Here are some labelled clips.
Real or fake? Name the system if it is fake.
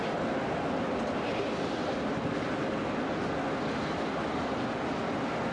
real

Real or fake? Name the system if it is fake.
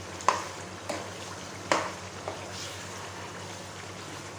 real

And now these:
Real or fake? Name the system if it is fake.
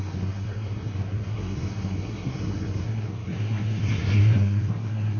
fake, codec, SNAC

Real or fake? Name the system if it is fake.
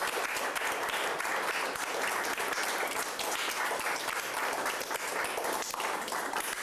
real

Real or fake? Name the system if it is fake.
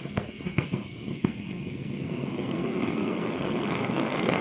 fake, codec, SNAC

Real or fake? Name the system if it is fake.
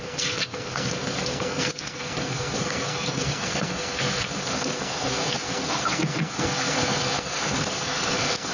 fake, codec, SNAC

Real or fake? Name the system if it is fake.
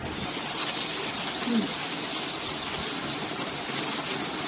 real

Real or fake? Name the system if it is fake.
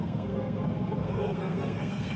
fake, codec, SNAC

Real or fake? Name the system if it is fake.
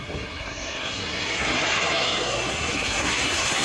fake, codec, SNAC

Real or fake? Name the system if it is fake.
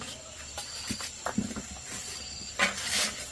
real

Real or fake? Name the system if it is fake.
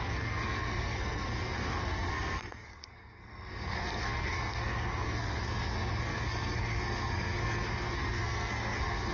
fake, codec, SNAC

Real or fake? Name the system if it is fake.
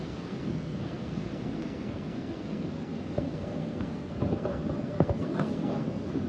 fake, codec, SNAC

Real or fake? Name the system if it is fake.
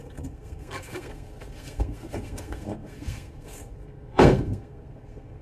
fake, codec, SNAC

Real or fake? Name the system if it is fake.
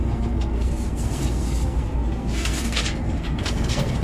fake, codec, SNAC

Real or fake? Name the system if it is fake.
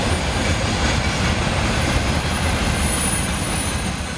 real